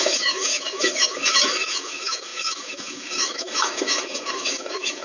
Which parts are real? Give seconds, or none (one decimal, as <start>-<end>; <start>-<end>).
none